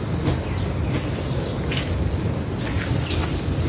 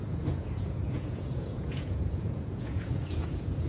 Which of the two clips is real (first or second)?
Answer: first